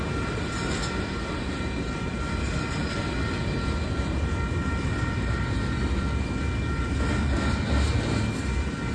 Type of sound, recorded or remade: recorded